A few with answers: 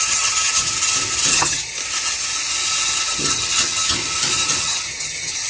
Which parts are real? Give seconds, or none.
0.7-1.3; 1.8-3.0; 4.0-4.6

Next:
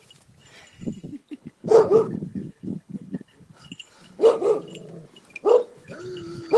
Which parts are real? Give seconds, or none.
0.0-1.2; 4.3-5.7

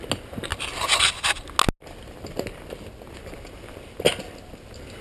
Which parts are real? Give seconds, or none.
0.0-5.0

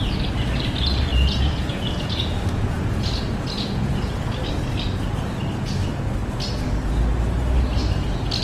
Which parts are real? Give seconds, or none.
0.0-1.1; 4.2-8.4

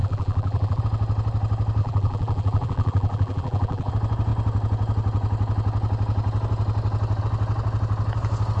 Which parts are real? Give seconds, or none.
0.8-1.8; 3.9-8.6